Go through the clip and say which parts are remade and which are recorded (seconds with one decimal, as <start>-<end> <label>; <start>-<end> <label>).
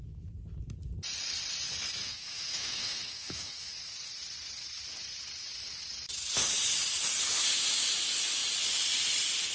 0.0-2.0 recorded; 2.0-3.7 remade; 3.7-9.5 recorded